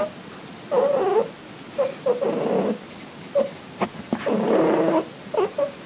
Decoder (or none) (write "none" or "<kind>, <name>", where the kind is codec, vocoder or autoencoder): none